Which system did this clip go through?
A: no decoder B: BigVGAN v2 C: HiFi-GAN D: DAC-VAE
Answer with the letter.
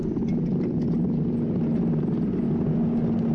A